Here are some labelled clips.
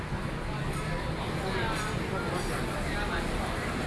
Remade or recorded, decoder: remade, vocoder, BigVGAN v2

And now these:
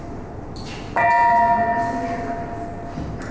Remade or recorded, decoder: recorded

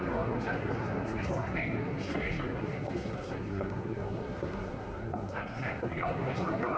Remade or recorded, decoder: remade, codec, SNAC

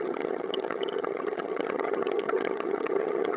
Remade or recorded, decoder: remade, vocoder, HiFi-GAN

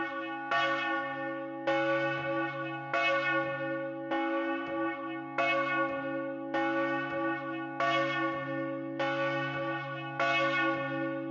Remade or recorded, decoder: recorded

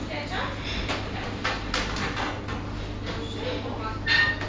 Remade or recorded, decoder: recorded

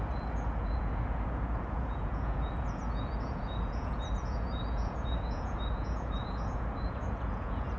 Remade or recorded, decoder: remade, vocoder, Vocos